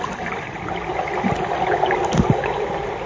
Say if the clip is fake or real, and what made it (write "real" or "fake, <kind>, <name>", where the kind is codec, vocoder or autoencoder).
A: real